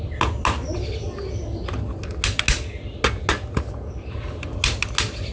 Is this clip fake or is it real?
real